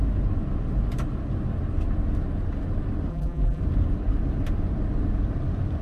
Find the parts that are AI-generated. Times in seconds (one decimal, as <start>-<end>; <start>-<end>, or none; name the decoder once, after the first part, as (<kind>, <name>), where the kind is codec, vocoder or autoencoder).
3.1-3.6 (vocoder, BigVGAN v2)